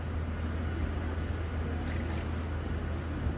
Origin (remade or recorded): recorded